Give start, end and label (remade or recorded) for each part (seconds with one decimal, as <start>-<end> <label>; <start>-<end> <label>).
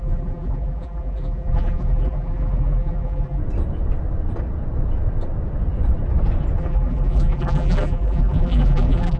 0.0-3.4 remade; 3.4-6.6 recorded; 6.6-9.2 remade